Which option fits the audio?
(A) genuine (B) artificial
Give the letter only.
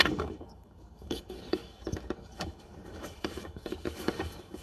B